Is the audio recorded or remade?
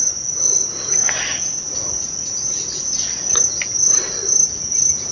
recorded